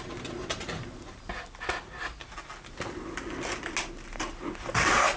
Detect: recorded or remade recorded